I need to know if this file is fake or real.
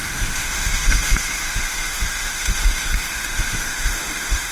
fake